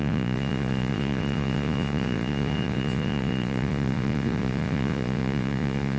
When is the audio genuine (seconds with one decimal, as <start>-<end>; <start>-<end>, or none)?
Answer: none